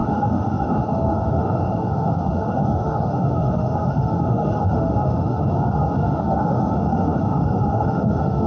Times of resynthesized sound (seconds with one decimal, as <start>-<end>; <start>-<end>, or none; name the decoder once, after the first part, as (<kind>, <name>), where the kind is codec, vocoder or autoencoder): 0.0-8.5 (autoencoder, DAC-VAE)